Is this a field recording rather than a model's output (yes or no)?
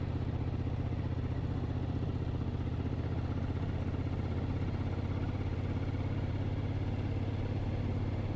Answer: yes